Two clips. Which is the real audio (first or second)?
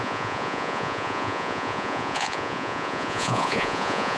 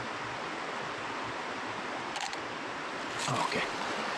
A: second